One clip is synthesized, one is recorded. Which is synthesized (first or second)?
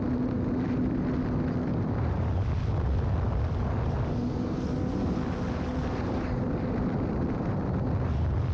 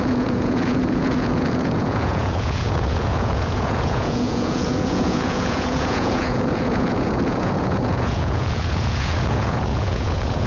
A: second